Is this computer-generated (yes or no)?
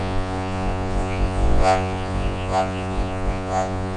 yes